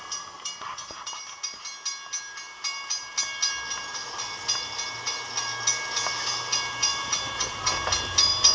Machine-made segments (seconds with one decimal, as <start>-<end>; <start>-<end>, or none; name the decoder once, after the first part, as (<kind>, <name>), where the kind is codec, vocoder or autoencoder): 6.9-7.7 (vocoder, BigVGAN v2)